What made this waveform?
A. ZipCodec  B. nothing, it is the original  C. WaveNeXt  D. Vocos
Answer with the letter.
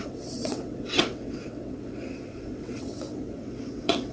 C